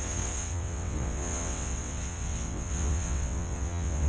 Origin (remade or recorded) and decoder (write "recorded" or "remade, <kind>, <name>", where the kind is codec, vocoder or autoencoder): remade, vocoder, WaveNeXt